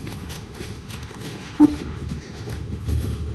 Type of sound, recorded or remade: remade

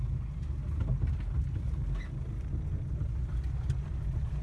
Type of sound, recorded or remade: recorded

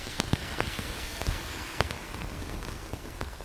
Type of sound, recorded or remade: remade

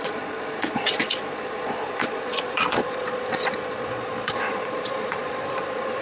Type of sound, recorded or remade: remade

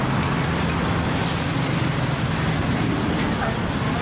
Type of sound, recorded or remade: recorded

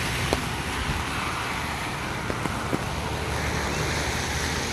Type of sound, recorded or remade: recorded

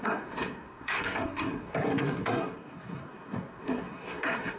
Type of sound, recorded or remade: remade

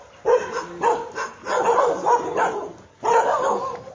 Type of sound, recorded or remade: recorded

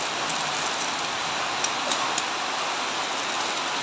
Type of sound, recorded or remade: recorded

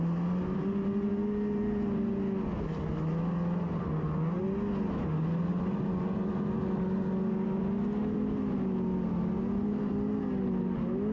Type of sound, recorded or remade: recorded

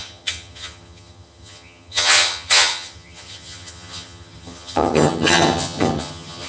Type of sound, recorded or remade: remade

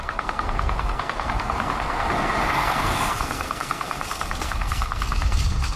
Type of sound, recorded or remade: remade